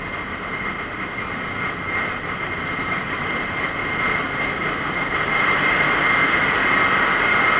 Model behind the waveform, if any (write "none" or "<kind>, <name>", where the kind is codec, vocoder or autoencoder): none